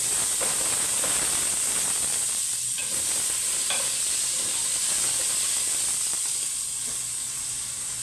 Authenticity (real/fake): real